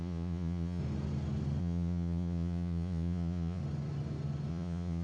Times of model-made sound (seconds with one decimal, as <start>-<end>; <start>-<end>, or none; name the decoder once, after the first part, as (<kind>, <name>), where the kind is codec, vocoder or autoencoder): 0.0-0.8 (vocoder, Vocos); 1.6-3.6; 4.5-5.0